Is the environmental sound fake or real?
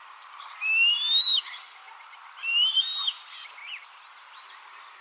real